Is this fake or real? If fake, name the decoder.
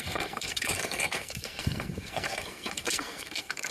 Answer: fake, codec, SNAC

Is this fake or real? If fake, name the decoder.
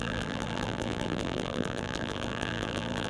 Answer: fake, vocoder, BigVGAN v2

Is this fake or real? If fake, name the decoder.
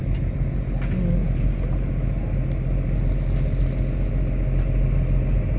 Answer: real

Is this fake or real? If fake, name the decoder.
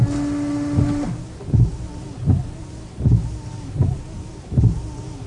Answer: real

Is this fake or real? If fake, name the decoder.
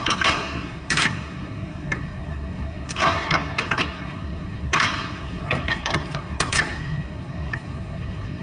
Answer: fake, codec, SNAC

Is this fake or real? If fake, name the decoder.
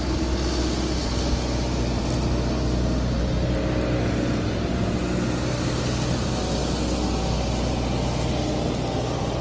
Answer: real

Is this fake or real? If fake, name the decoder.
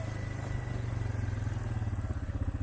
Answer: real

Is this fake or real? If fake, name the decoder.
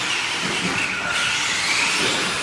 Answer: real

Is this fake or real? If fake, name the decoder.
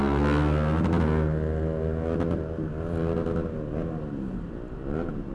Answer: real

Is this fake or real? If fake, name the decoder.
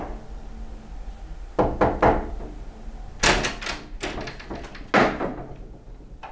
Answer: real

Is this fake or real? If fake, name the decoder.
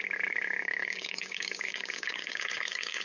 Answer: fake, codec, DAC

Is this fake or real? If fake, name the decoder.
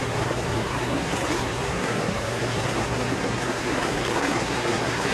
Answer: fake, codec, SNAC